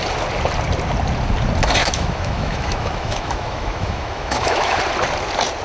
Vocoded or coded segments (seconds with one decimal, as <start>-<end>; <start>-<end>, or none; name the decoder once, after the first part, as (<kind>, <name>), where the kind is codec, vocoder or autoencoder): 1.8-4.8 (autoencoder, DAC-VAE)